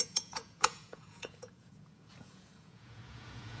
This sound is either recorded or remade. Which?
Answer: remade